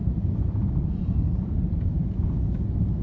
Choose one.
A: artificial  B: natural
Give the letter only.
A